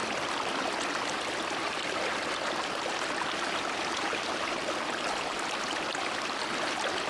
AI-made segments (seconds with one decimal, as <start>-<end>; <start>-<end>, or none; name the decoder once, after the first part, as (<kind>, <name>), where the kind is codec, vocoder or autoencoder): none